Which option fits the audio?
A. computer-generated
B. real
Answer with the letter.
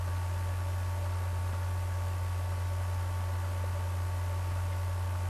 B